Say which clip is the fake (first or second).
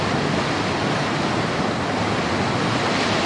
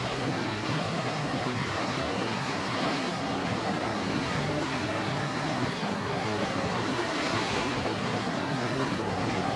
second